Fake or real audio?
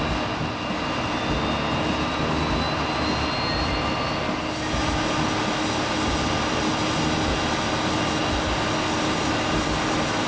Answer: real